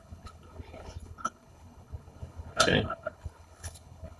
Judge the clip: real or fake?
fake